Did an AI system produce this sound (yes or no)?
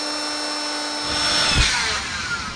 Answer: no